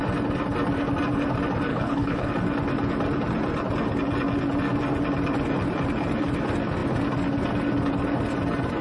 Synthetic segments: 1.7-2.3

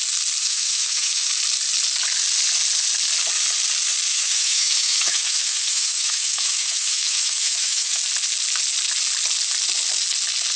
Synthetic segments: 0.4-1.3; 4.1-8.0

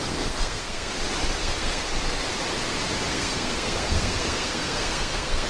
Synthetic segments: 0.0-0.9; 1.4-1.8; 3.1-5.5

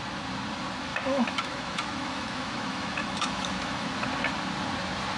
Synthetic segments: 0.9-3.9

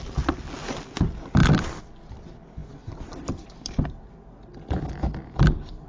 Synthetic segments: none

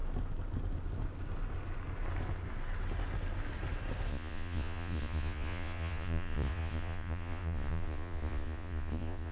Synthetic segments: 4.1-9.3